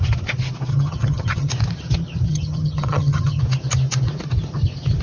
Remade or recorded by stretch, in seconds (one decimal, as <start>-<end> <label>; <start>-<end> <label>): 0.0-0.7 recorded; 0.7-1.5 remade; 1.5-2.3 recorded; 2.3-3.4 remade; 3.4-5.0 recorded